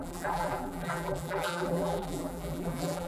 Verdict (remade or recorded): remade